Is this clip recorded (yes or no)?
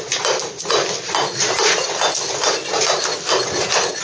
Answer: yes